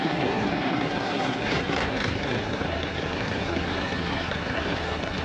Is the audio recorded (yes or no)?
no